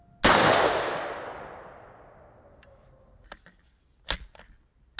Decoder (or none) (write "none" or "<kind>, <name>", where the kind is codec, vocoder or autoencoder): none